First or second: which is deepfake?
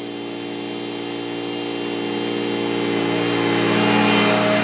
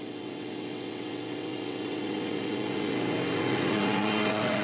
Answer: second